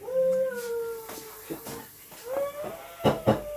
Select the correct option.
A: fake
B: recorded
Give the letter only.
B